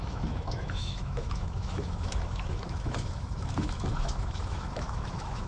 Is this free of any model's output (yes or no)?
no